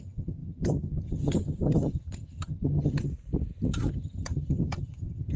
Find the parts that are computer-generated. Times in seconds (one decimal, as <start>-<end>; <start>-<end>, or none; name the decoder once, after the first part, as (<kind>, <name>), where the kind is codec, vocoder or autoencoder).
0.0-3.1 (vocoder, HiFi-GAN); 3.9-5.4